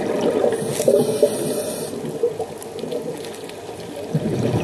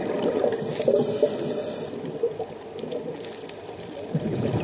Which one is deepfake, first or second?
second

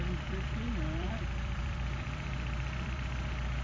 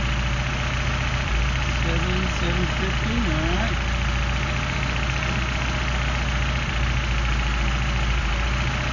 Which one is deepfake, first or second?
first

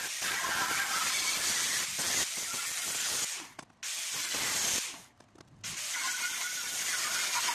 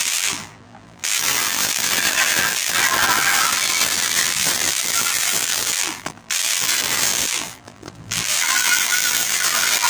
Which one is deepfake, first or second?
second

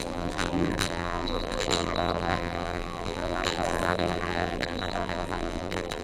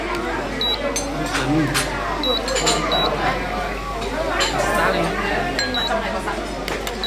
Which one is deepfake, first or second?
first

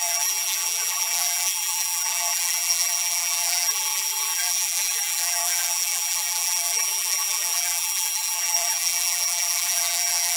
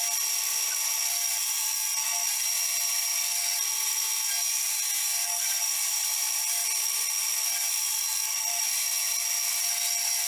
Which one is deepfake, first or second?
first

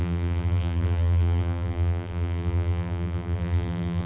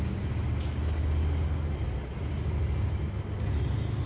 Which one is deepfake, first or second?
first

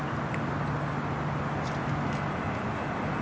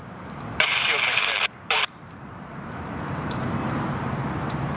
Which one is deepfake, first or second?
second